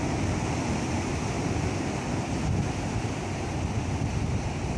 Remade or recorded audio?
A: recorded